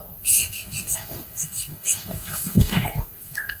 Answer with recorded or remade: remade